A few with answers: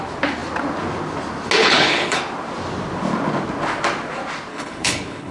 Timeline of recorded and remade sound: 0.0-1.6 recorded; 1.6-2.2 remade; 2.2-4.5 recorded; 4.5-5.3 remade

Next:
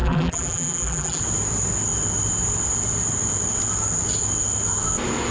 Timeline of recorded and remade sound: 0.0-1.2 remade; 1.2-5.3 recorded

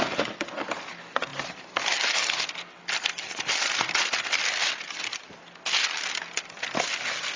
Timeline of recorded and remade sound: 0.0-7.4 recorded